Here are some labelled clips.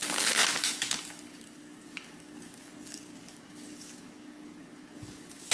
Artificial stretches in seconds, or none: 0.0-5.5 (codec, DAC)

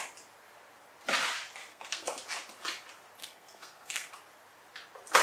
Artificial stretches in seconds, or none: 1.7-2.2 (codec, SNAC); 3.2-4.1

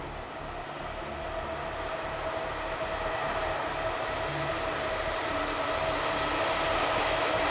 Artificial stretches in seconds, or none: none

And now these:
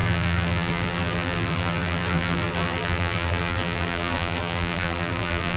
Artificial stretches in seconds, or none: 0.0-5.6 (vocoder, BigVGAN v2)

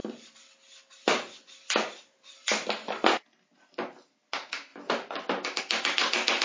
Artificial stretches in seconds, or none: 1.0-2.8 (vocoder, BigVGAN v2); 4.3-4.7; 5.6-6.4

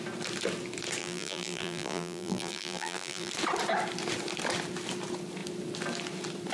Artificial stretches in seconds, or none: 1.0-3.3 (vocoder, BigVGAN v2)